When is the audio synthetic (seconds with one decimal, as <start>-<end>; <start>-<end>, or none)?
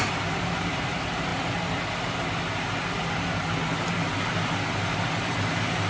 none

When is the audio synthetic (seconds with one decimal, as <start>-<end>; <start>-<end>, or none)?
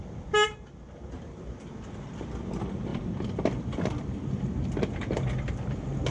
2.9-4.4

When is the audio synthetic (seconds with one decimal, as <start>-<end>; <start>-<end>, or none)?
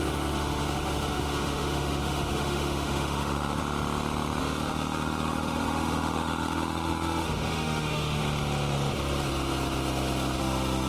0.0-3.6; 4.4-8.2; 10.4-10.9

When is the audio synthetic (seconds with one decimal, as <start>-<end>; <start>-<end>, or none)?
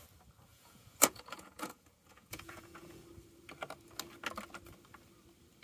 0.5-3.0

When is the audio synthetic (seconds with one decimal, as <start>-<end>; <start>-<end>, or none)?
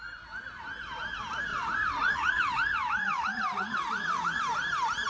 1.5-4.4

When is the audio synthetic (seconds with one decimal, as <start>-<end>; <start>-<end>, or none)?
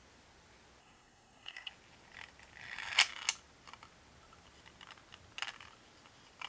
0.8-1.7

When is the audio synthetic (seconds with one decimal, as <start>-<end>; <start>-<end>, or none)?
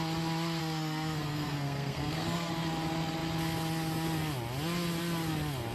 0.6-2.5